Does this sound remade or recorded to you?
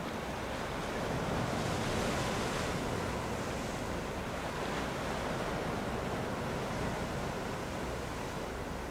recorded